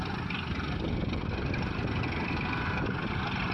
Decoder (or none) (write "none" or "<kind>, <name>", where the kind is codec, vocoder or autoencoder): none